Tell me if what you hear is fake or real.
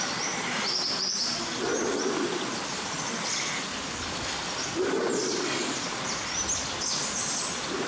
real